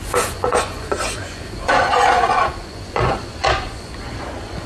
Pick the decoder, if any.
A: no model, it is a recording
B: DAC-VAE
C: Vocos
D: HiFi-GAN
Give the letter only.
C